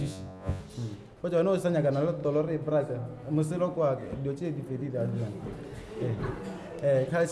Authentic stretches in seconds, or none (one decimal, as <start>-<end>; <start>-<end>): 0.6-7.3